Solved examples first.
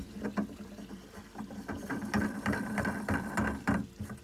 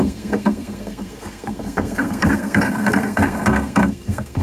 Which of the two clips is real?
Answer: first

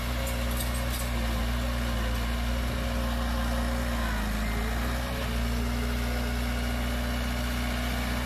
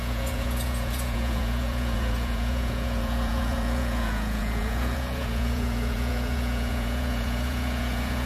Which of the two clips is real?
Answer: first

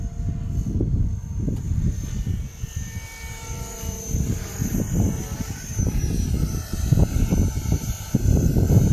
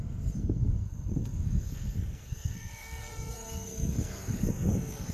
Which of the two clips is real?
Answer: first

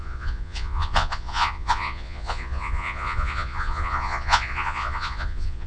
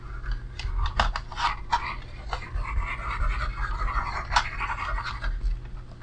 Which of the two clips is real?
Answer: second